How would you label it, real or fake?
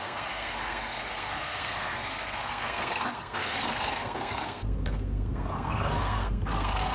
fake